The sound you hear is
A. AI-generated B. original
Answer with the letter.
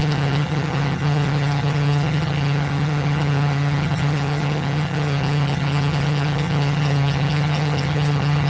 A